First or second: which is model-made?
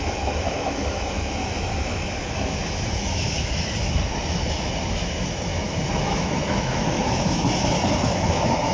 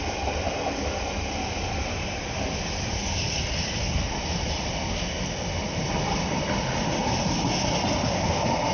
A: first